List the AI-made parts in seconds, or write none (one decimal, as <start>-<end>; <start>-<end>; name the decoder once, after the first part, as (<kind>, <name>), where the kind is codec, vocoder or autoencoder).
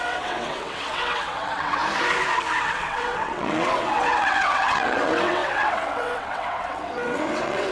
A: 0.0-1.8 (vocoder, WaveNeXt); 2.6-7.7